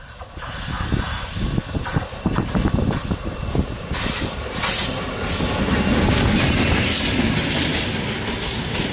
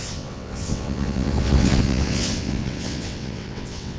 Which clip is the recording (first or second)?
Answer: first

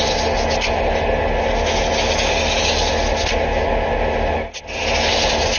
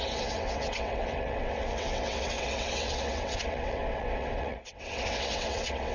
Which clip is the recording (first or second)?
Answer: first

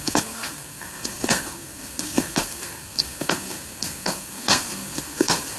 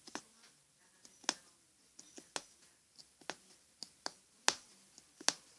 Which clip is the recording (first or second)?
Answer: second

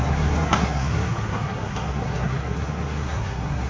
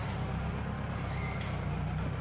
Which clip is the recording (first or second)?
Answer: second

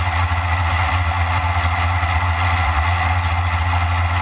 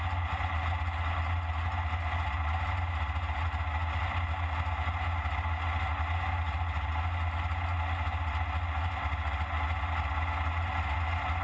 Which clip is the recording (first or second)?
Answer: second